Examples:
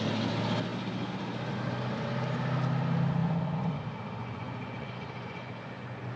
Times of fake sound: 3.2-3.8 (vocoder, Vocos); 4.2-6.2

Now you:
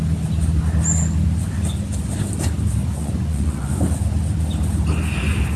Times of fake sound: 2.8-3.8 (vocoder, Vocos)

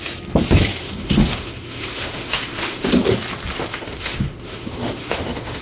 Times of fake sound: 0.7-2.9 (autoencoder, DAC-VAE); 3.7-5.6